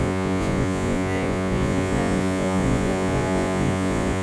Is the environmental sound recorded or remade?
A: remade